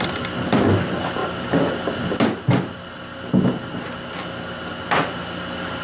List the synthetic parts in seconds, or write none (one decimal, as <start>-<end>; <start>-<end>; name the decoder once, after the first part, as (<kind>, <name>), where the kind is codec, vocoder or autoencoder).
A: none